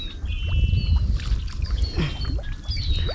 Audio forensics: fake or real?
real